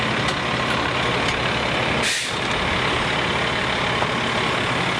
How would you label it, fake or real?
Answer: real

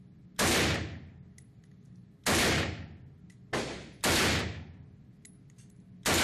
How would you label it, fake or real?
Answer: real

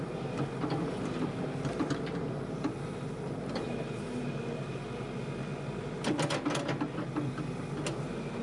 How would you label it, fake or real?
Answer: real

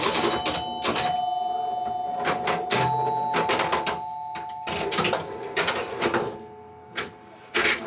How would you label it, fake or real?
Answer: real